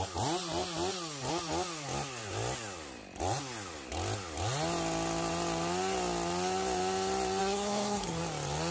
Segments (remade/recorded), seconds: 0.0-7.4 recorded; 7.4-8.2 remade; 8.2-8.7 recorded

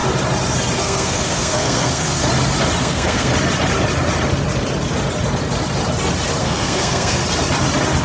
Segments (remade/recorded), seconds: 0.0-0.8 recorded; 0.8-2.2 remade; 2.2-2.8 recorded; 2.8-3.3 remade; 3.3-6.4 recorded; 6.4-7.2 remade; 7.2-8.0 recorded